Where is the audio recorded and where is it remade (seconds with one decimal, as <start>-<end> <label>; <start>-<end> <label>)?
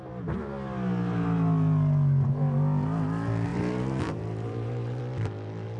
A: 0.0-3.5 recorded; 3.5-5.0 remade; 5.0-5.8 recorded